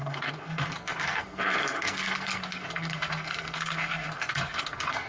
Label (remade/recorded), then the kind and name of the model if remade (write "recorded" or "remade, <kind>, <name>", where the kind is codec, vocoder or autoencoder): remade, codec, SNAC